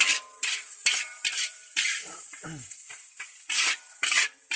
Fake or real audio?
fake